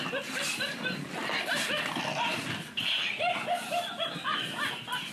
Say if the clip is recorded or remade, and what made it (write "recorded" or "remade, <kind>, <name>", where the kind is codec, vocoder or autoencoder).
recorded